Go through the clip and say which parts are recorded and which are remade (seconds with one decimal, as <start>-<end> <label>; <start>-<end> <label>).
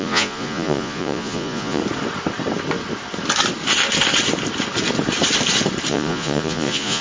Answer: 0.0-1.8 remade; 1.8-5.9 recorded; 5.9-7.0 remade